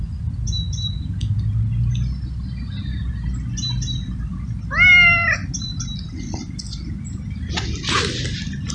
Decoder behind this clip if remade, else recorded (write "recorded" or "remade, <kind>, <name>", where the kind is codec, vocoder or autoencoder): recorded